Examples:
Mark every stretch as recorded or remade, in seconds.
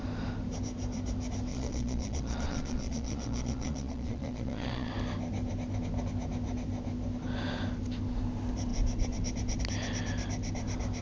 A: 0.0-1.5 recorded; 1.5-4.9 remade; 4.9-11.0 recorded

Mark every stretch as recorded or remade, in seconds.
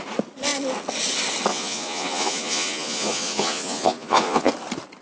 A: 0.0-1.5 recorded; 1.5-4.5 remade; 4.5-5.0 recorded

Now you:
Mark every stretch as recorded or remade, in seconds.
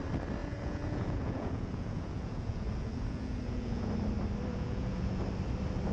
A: 0.0-0.4 recorded; 0.4-3.9 remade; 3.9-4.5 recorded; 4.5-5.2 remade; 5.2-5.9 recorded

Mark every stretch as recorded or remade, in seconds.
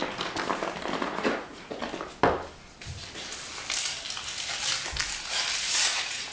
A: 0.0-1.0 recorded; 1.0-1.8 remade; 1.8-5.6 recorded; 5.6-6.3 remade